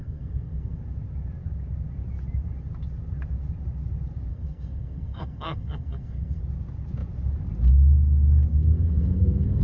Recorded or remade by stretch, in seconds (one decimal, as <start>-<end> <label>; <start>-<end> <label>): 0.0-0.8 remade; 0.8-4.3 recorded; 4.3-6.4 remade; 6.4-8.5 recorded; 8.5-9.6 remade